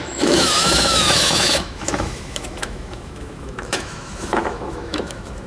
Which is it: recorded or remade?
remade